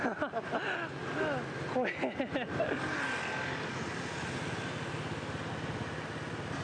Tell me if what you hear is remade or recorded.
recorded